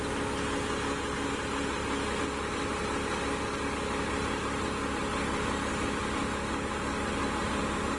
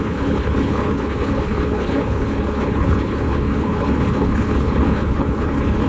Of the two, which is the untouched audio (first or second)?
first